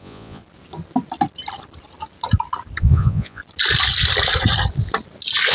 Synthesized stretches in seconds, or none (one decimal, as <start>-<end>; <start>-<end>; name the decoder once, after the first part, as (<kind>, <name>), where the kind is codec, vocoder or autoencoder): 0.0-0.4 (vocoder, Vocos); 2.8-3.4